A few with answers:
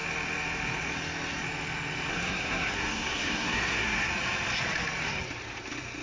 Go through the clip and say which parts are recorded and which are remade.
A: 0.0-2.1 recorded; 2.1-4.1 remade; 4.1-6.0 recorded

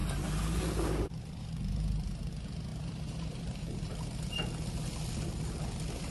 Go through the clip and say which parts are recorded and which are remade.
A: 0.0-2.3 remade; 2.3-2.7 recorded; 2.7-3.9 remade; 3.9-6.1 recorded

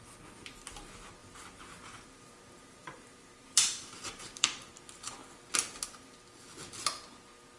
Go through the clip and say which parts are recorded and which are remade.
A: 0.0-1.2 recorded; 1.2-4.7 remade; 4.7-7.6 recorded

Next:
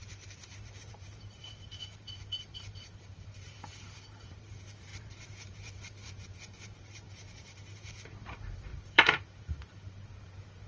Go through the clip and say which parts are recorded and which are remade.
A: 0.0-10.7 remade

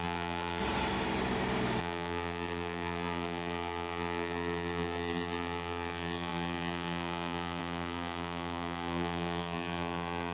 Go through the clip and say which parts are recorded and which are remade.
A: 0.0-0.6 remade; 0.6-1.8 recorded; 1.8-10.3 remade

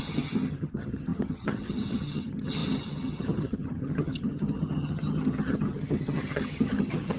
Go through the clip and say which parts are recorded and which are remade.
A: 0.0-7.2 remade

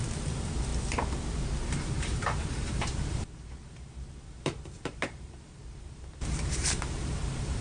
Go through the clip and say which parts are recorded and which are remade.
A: 0.0-0.7 remade; 0.7-1.7 recorded; 1.7-7.6 remade

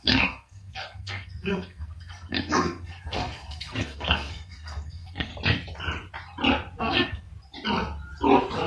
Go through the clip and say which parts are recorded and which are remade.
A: 0.0-5.3 remade; 5.3-6.8 recorded; 6.8-7.3 remade; 7.3-8.7 recorded